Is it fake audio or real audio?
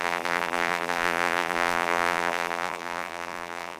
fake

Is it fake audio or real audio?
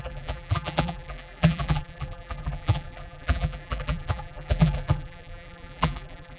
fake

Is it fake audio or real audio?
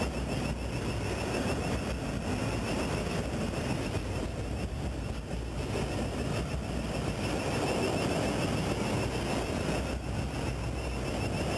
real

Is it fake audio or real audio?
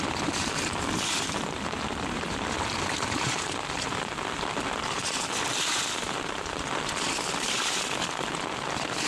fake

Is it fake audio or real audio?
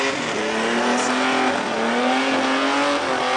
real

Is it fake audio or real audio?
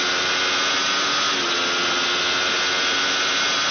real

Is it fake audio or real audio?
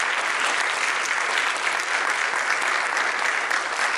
real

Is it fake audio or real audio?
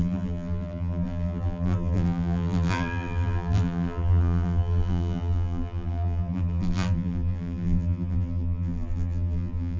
fake